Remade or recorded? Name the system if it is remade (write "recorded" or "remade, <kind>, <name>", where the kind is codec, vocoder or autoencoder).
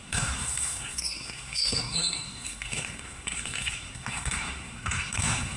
remade, codec, SNAC